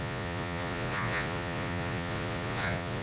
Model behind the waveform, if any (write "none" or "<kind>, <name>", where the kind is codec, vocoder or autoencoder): vocoder, Vocos